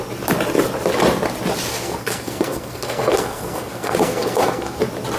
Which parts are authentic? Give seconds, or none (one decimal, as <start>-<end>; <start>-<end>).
0.0-1.7; 4.8-5.2